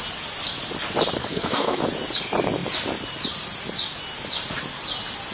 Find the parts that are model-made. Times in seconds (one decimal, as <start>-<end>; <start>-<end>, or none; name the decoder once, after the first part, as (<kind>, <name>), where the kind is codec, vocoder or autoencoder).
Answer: 1.2-1.8 (codec, SNAC)